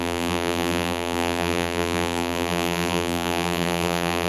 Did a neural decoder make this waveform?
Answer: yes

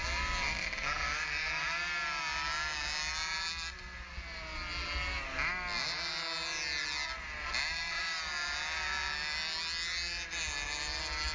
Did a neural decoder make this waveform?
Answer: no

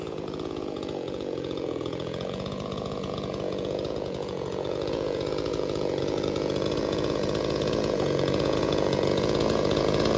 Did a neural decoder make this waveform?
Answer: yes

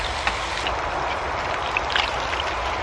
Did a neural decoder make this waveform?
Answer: no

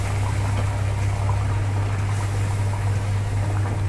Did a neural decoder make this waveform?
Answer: no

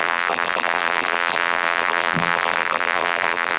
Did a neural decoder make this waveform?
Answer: yes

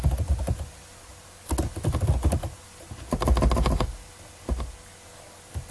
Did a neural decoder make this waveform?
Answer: no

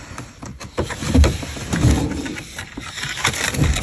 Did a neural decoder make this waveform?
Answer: yes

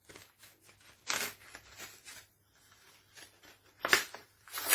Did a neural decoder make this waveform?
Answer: no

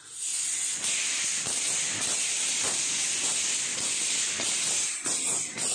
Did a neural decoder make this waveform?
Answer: no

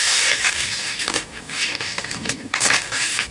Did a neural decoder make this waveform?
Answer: yes